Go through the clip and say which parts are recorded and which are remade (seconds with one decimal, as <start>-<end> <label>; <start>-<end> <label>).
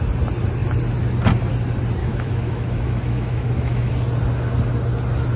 0.0-2.0 recorded; 2.0-3.9 remade; 3.9-5.4 recorded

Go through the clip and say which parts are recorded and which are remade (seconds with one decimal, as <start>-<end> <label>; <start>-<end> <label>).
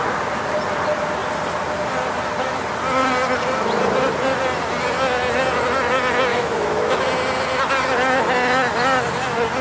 0.0-6.3 recorded; 6.3-7.0 remade; 7.0-9.6 recorded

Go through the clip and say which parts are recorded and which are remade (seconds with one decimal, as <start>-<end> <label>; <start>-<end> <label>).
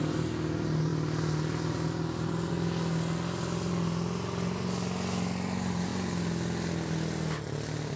0.0-8.0 recorded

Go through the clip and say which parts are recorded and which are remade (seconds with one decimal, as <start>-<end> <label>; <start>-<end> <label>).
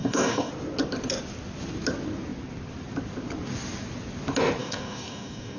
0.0-0.5 remade; 0.5-4.6 recorded; 4.6-5.6 remade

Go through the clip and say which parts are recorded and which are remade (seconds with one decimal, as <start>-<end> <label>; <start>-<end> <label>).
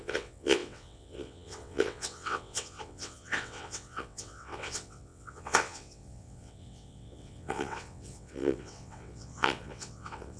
0.0-10.4 remade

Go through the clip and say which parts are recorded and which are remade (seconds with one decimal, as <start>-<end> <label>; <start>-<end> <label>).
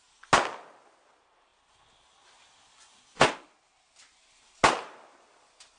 0.0-5.8 recorded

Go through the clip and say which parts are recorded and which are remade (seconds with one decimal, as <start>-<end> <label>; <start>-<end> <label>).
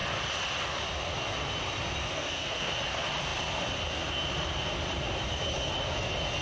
0.0-2.0 recorded; 2.0-2.7 remade; 2.7-6.4 recorded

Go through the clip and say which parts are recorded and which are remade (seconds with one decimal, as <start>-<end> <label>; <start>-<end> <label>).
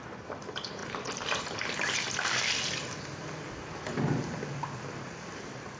0.0-5.8 recorded